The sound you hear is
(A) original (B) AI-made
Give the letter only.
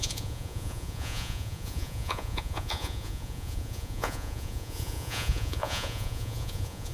B